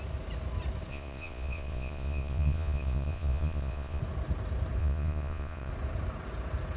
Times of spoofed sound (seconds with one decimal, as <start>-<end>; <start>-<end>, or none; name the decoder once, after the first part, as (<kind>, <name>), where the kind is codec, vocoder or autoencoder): 0.9-4.0 (vocoder, Vocos); 4.8-5.7